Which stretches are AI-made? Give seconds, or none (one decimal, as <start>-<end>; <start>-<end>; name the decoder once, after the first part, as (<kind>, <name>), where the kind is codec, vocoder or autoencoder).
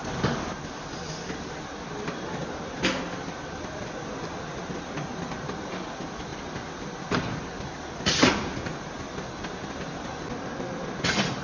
none